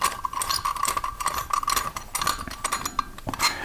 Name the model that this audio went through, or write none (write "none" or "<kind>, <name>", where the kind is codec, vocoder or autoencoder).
none